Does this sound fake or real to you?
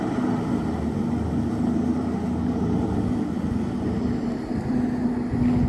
real